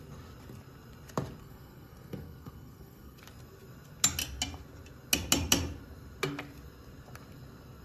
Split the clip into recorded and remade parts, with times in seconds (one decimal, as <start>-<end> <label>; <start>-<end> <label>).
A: 0.0-1.4 recorded; 1.4-3.2 remade; 3.2-7.8 recorded